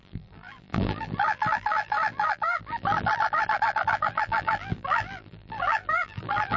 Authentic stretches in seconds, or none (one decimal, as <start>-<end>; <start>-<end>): none